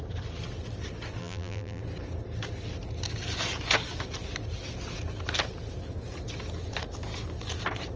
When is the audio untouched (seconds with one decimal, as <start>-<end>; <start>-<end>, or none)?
0.0-1.2; 1.8-8.0